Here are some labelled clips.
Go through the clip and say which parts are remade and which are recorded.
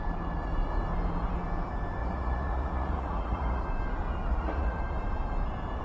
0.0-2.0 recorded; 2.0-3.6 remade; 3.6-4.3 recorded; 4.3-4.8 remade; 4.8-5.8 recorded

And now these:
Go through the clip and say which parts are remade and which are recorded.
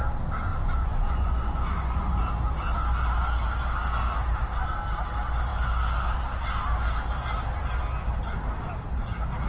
0.0-0.5 recorded; 0.5-2.2 remade; 2.2-9.5 recorded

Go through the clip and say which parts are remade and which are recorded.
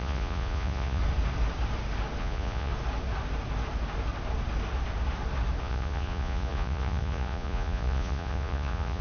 0.0-1.0 remade; 1.0-2.2 recorded; 2.2-2.7 remade; 2.7-5.6 recorded; 5.6-9.0 remade